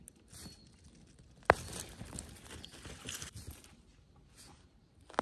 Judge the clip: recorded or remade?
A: recorded